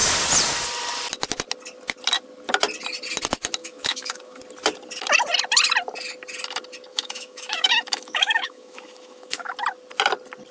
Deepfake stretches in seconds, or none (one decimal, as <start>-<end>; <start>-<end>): 3.6-4.4; 6.9-9.5